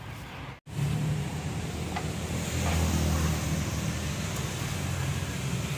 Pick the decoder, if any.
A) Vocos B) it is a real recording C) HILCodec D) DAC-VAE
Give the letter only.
B